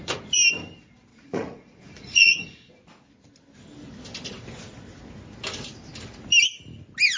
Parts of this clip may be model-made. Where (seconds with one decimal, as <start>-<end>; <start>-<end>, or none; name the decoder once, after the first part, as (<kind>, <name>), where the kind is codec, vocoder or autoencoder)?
1.1-2.7 (vocoder, Vocos)